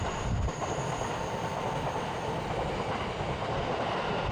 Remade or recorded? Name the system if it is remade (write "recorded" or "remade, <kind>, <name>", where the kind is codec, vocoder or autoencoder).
recorded